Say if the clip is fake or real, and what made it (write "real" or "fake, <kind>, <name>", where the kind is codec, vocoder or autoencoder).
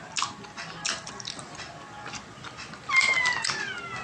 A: real